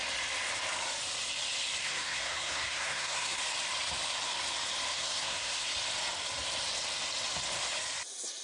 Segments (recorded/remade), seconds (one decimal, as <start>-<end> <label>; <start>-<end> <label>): 0.0-1.8 recorded; 1.8-3.4 remade; 3.4-4.9 recorded; 4.9-5.7 remade; 5.7-8.4 recorded